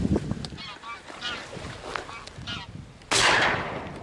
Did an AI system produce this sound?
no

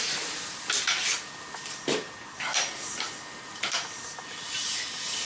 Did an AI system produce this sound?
no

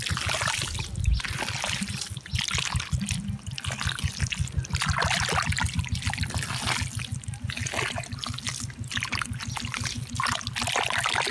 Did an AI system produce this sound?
no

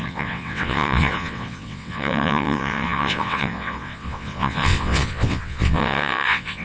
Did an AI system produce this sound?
yes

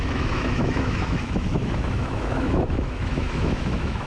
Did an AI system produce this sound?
yes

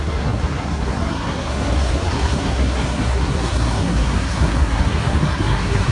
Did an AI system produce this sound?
yes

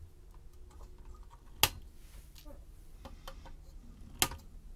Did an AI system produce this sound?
no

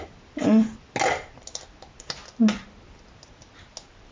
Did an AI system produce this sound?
no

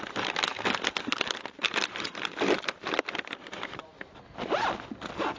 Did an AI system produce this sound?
no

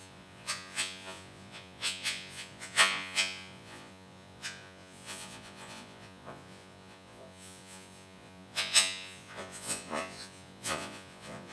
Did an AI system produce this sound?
yes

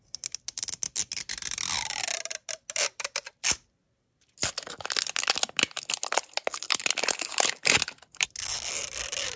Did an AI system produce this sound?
no